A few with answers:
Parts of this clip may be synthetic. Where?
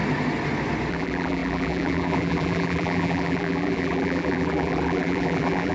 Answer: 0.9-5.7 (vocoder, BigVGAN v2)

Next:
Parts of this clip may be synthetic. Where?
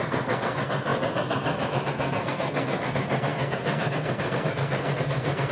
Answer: 0.0-5.5 (codec, SNAC)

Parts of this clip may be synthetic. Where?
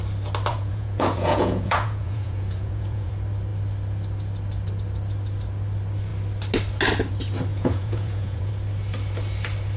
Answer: 0.5-3.1 (vocoder, Vocos); 7.5-8.5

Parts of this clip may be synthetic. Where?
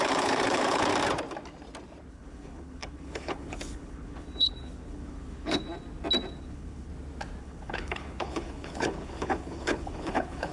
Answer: 0.0-0.9 (codec, HILCodec); 2.1-5.6; 6.4-6.9; 7.4-10.5